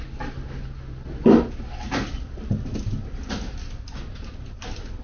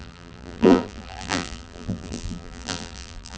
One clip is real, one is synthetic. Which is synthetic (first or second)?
second